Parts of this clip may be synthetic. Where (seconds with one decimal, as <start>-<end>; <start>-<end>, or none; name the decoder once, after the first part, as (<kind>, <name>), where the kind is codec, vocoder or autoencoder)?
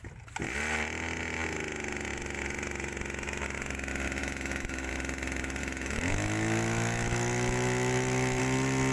4.2-4.9 (autoencoder, DAC-VAE); 5.6-8.4